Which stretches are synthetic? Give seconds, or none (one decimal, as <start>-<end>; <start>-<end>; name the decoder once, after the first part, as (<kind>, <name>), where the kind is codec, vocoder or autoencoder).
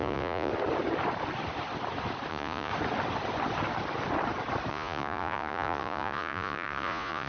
0.0-0.5 (vocoder, Vocos); 2.3-2.7; 4.7-7.3